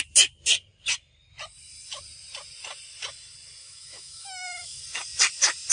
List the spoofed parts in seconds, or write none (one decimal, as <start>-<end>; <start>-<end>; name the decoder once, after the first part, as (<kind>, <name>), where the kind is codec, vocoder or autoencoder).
3.6-4.8 (autoencoder, DAC-VAE)